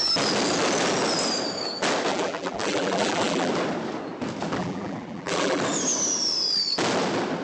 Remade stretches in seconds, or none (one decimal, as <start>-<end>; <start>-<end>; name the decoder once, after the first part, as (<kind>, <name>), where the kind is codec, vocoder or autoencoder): 2.1-3.5 (vocoder, BigVGAN v2); 4.6-5.6